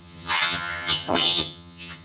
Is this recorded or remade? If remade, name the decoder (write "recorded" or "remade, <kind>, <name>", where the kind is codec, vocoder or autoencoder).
remade, vocoder, HiFi-GAN